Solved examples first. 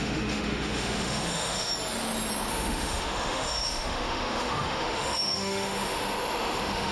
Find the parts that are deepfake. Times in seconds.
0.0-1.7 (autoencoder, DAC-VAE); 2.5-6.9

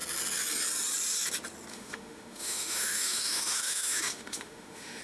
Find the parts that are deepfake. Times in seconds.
1.7-5.0 (autoencoder, DAC-VAE)